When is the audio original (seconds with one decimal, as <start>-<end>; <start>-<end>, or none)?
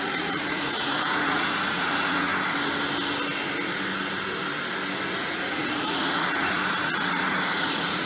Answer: 2.3-5.2